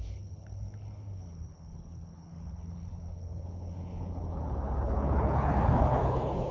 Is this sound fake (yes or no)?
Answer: yes